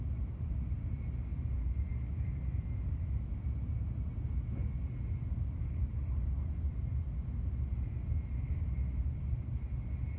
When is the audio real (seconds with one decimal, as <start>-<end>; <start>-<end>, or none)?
0.0-10.2